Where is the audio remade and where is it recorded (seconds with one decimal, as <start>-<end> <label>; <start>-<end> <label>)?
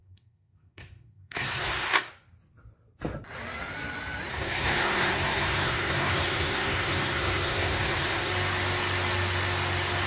0.0-2.1 remade; 2.1-4.3 recorded; 4.3-8.3 remade; 8.3-10.1 recorded